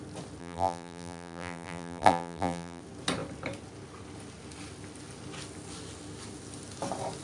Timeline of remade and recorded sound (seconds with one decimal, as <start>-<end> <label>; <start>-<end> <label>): 0.0-0.4 recorded; 0.4-2.8 remade; 2.8-7.2 recorded